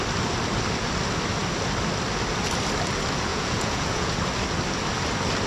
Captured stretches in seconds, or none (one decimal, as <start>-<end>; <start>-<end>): 0.0-3.3; 4.1-5.5